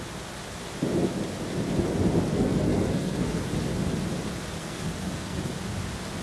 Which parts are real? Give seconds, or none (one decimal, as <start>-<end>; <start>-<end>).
0.0-2.3; 3.5-4.6; 5.6-6.2